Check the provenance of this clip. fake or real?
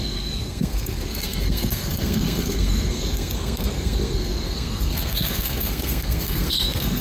fake